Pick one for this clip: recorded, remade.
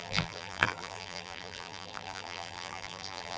remade